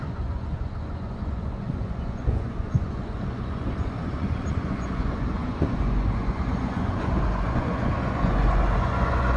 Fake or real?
fake